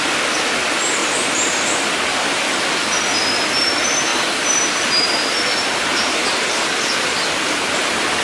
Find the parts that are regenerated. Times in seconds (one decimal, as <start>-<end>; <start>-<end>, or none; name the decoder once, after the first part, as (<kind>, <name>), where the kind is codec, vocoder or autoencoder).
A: 1.0-2.5 (vocoder, BigVGAN v2); 5.9-6.5